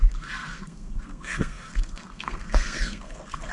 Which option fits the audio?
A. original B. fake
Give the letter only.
B